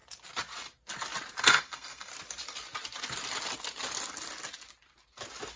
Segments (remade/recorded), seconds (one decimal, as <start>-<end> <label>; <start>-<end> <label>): 0.0-1.4 recorded; 1.4-2.1 remade; 2.1-5.6 recorded